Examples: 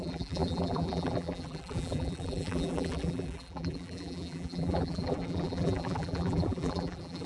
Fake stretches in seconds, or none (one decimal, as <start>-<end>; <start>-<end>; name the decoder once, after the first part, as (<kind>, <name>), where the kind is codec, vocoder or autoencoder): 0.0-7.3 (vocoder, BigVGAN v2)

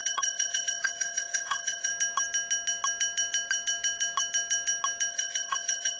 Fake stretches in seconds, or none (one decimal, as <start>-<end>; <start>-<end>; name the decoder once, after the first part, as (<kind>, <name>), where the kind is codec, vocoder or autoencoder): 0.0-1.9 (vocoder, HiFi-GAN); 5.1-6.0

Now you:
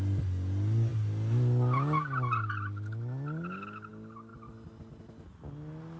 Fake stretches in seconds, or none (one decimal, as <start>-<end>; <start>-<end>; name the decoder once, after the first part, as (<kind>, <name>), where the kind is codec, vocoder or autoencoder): none

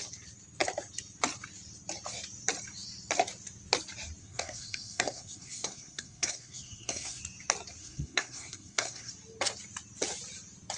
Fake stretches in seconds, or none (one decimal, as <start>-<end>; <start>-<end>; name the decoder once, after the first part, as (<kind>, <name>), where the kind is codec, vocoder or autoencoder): 4.2-7.2 (codec, SNAC); 7.8-9.1

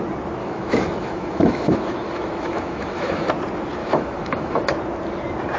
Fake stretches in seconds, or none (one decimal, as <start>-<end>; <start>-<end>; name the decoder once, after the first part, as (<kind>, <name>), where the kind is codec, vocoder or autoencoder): 0.4-3.3 (autoencoder, DAC-VAE); 3.8-4.6

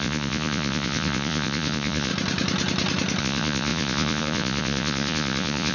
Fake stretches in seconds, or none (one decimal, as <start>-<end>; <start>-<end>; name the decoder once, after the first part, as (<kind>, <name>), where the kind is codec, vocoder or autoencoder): 0.0-2.1 (vocoder, Vocos); 3.2-5.7

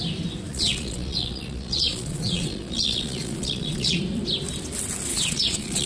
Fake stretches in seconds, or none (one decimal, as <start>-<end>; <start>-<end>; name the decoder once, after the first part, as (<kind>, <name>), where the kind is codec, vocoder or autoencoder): 0.5-4.0 (vocoder, Vocos); 5.1-5.9

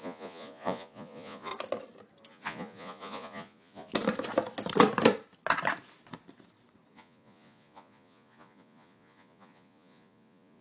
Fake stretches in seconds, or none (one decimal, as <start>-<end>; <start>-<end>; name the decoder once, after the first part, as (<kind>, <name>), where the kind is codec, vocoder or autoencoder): 0.0-1.5 (vocoder, Vocos); 2.3-3.9; 6.9-10.6